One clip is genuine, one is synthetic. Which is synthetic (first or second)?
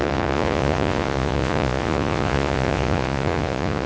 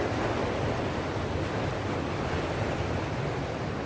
first